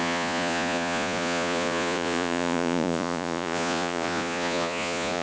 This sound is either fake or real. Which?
fake